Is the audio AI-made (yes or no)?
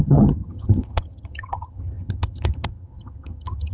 yes